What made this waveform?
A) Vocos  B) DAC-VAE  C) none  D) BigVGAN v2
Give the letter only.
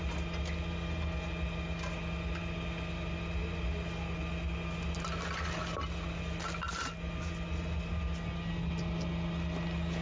C